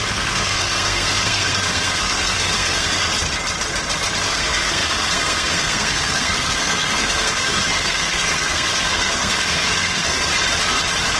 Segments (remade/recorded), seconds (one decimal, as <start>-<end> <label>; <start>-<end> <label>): 0.0-3.1 remade; 3.1-4.2 recorded; 4.2-10.3 remade; 10.3-11.2 recorded